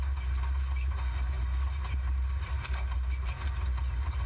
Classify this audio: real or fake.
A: real